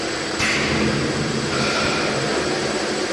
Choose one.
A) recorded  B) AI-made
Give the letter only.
A